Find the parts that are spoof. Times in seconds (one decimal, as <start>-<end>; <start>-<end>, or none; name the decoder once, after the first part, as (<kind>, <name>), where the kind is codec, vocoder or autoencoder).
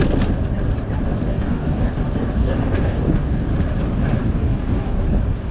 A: 1.3-1.9 (codec, DAC); 2.4-3.5; 4.2-5.0